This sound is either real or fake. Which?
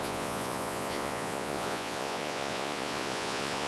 fake